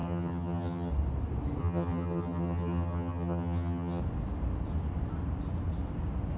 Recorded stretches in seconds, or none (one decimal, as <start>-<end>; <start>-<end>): 0.9-1.6; 4.0-6.4